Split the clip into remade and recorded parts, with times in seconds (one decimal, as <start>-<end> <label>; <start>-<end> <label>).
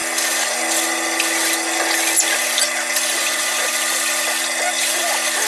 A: 0.0-3.2 recorded; 3.2-3.7 remade; 3.7-5.5 recorded